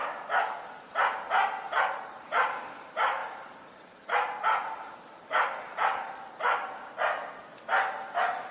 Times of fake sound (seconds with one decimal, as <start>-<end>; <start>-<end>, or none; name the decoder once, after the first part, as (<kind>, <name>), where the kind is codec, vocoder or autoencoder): none